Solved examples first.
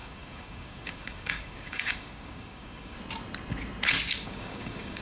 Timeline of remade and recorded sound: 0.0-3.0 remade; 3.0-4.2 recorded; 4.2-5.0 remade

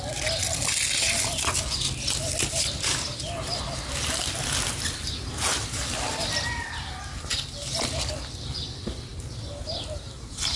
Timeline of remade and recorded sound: 0.0-10.6 recorded

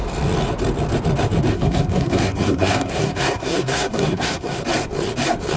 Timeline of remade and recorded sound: 0.0-1.5 recorded; 1.5-4.6 remade; 4.6-5.6 recorded